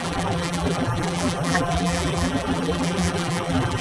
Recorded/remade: remade